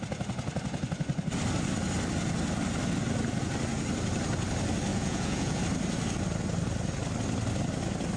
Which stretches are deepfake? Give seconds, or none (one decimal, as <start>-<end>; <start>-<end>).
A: 4.9-5.6